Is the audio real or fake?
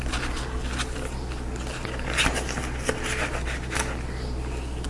real